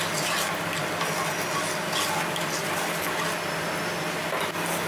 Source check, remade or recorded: recorded